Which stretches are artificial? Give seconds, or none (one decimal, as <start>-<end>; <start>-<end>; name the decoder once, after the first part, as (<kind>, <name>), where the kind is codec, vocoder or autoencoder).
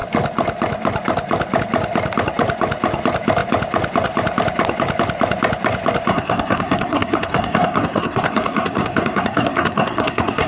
6.1-10.5 (codec, SNAC)